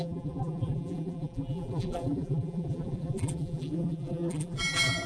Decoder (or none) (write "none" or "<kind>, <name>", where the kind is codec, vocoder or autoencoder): vocoder, BigVGAN v2